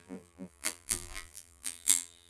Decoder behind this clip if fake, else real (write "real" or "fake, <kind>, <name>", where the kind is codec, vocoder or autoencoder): fake, vocoder, BigVGAN v2